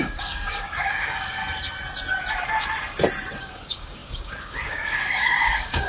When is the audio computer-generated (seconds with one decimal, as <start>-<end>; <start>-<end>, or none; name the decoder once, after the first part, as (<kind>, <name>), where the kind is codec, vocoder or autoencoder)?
0.0-1.4 (codec, DAC); 3.4-5.9